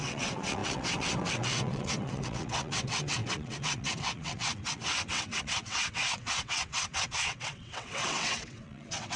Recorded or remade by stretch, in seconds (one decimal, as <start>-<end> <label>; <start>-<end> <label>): 0.0-9.2 remade

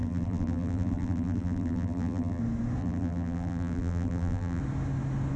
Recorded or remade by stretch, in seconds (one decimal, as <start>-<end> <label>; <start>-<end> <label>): 0.0-2.4 remade; 2.4-2.8 recorded; 2.8-4.6 remade; 4.6-5.4 recorded